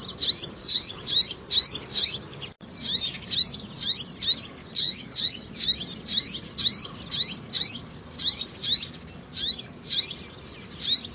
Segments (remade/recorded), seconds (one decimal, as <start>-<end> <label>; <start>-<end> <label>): 0.0-0.6 recorded; 0.6-1.1 remade; 1.1-4.6 recorded; 4.6-5.5 remade; 5.5-11.1 recorded